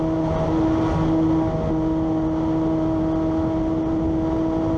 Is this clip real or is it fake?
real